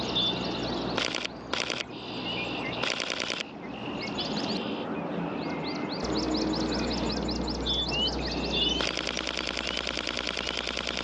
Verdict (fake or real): real